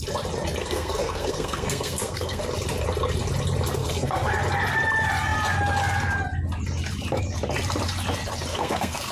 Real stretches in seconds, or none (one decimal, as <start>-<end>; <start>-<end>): 0.0-0.6; 2.4-3.8; 4.3-8.5